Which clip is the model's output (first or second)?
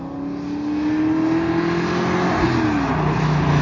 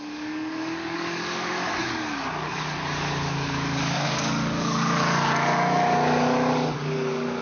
second